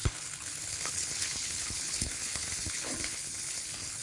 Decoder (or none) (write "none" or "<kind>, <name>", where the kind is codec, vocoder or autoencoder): codec, HILCodec